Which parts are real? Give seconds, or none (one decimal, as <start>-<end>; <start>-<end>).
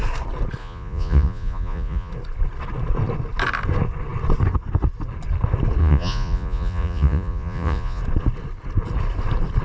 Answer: 0.0-0.6; 2.1-5.8; 8.0-9.6